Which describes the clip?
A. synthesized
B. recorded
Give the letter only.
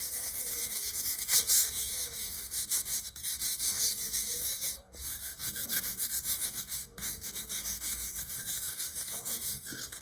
A